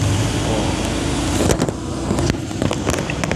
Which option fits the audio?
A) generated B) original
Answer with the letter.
B